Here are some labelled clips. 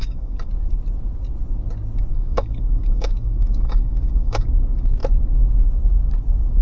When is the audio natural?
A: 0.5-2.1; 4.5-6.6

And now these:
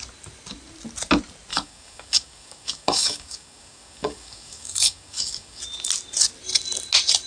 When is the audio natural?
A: 0.0-1.5; 5.6-7.3

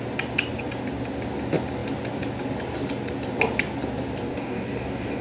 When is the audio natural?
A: 0.0-4.3

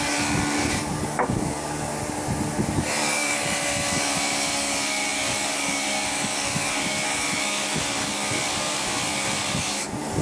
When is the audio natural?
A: 1.9-2.7

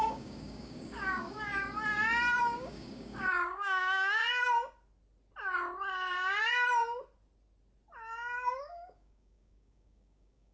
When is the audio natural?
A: 1.5-2.4; 4.2-8.6

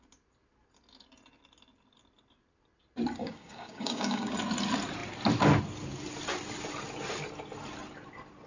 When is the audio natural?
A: 0.0-3.2; 4.3-8.5

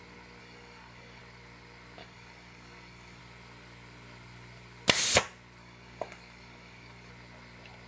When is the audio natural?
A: 0.0-0.4; 1.2-2.0; 3.2-5.6; 7.1-7.9